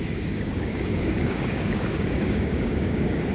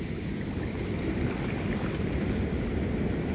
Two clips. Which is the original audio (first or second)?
second